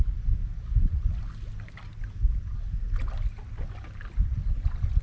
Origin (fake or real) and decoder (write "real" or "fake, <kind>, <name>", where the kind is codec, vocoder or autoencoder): real